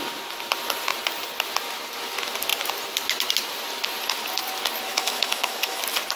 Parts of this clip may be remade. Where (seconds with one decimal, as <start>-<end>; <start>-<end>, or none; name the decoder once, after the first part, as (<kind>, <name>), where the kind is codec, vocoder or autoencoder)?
4.9-5.8 (autoencoder, DAC-VAE)